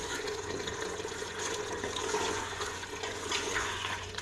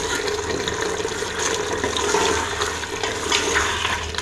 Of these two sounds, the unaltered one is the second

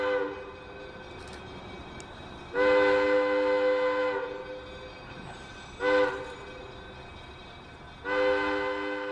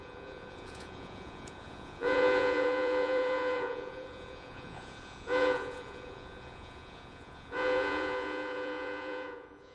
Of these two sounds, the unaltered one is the first